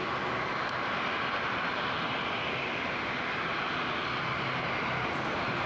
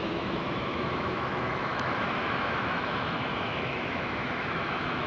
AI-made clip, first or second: second